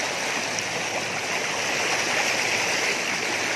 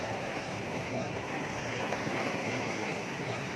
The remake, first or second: second